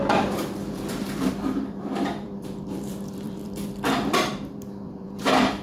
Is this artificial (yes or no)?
yes